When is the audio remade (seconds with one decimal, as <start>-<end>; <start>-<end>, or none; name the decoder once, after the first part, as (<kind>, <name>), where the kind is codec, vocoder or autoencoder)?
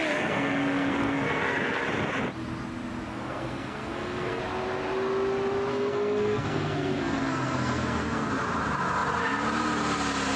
0.0-1.8 (codec, SNAC); 3.1-4.4; 5.7-8.3